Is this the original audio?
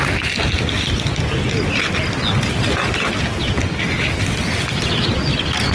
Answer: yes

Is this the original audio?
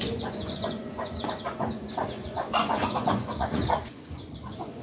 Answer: no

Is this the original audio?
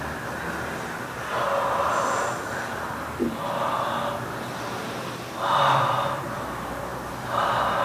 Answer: yes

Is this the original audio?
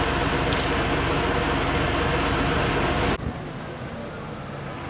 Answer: yes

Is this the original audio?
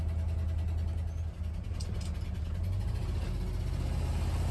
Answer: yes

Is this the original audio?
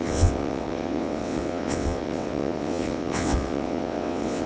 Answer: no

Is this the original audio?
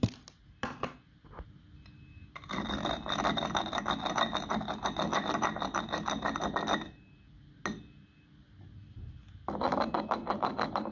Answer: yes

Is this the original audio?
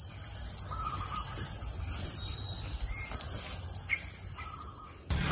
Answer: yes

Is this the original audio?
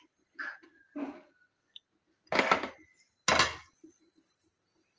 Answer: yes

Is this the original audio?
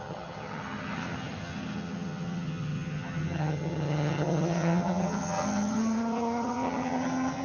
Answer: no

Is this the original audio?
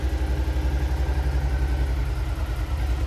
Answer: yes